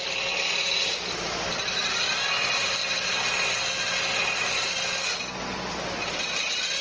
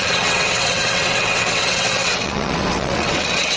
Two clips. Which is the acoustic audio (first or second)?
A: first